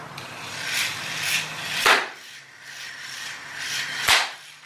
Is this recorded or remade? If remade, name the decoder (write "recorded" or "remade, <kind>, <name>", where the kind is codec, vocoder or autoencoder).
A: remade, vocoder, BigVGAN v2